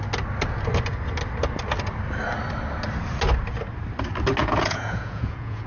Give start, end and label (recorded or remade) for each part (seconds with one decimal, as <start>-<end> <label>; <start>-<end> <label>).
0.0-4.4 recorded; 4.4-5.7 remade